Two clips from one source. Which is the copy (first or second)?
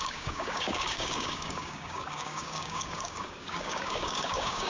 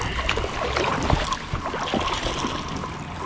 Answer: first